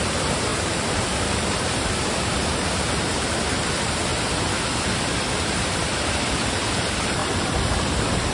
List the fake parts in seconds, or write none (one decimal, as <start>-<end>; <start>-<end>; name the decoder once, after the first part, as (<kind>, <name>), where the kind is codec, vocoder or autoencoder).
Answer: 0.0-4.1 (vocoder, BigVGAN v2); 5.3-7.2; 7.8-8.3